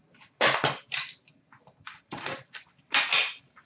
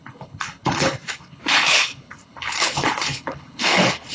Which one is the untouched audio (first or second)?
first